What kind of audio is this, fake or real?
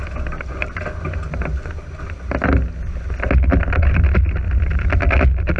real